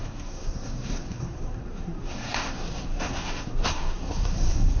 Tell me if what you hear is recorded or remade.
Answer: remade